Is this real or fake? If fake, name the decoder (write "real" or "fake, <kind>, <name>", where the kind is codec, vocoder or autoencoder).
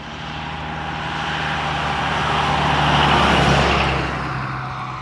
real